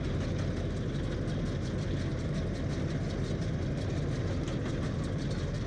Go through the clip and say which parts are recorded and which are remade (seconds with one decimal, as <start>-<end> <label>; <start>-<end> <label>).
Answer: 0.0-5.7 recorded

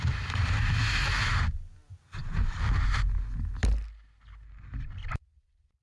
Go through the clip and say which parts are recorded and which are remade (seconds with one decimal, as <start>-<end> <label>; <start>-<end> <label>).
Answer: 0.0-5.8 recorded

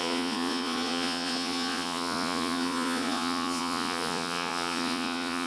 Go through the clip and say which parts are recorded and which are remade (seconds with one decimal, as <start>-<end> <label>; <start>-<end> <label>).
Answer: 0.0-5.5 remade